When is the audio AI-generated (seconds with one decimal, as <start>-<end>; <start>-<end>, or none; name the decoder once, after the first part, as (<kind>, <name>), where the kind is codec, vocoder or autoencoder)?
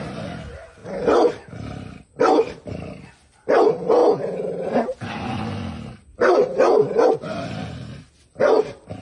none